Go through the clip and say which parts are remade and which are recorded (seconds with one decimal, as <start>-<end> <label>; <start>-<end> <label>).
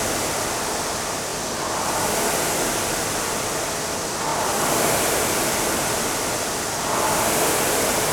0.0-8.1 recorded